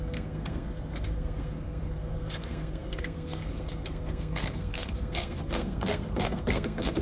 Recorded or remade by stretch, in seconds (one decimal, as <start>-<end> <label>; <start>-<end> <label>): 0.0-7.0 remade